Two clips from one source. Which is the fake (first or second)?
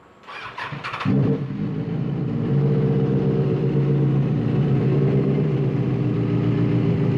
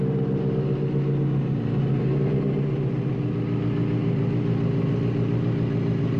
first